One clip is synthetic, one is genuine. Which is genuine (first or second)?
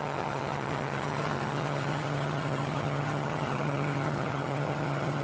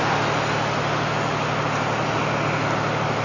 second